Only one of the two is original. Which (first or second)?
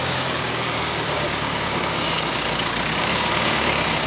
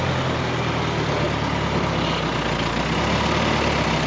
second